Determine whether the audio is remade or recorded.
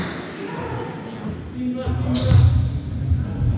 recorded